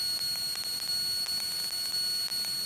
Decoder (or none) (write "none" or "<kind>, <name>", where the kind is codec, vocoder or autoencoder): none